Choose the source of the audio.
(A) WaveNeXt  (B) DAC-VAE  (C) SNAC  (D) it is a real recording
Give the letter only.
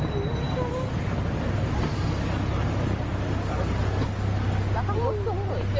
D